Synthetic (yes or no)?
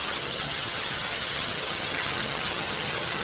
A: yes